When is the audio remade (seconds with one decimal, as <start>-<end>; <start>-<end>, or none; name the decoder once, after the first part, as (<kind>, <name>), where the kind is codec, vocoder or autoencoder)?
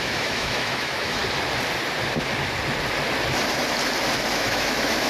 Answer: 0.0-1.2 (autoencoder, DAC-VAE); 4.3-5.1